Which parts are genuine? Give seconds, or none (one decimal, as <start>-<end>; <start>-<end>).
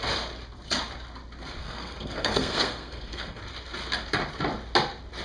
0.0-1.6; 3.4-5.2